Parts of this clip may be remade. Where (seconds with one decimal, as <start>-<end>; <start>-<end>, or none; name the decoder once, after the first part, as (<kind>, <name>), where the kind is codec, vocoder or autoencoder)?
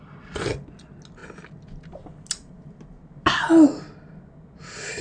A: none